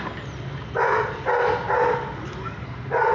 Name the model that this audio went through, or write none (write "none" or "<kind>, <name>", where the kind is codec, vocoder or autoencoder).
none